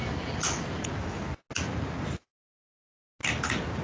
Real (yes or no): yes